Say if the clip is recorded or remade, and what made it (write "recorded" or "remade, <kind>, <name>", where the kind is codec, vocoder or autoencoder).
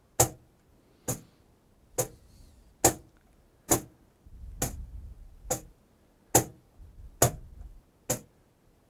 recorded